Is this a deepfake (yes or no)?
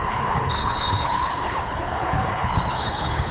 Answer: yes